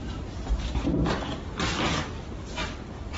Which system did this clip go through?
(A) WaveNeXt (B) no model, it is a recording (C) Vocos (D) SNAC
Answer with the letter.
B